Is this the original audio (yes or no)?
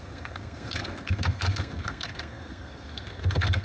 no